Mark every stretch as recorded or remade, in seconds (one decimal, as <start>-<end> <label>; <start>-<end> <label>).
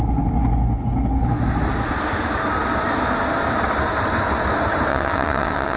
0.0-4.9 recorded; 4.9-5.8 remade